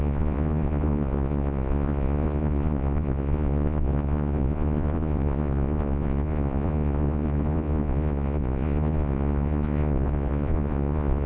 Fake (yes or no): yes